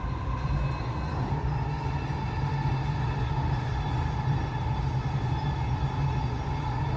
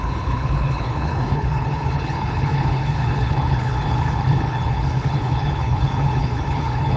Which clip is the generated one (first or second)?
second